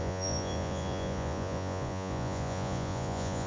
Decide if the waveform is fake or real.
fake